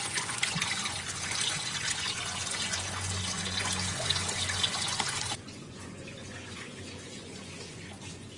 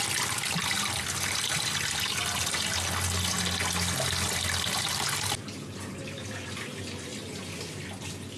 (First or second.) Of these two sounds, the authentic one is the second